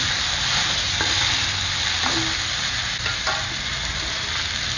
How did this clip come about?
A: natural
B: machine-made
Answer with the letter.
A